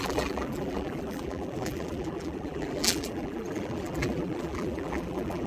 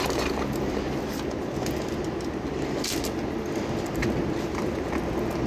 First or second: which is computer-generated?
first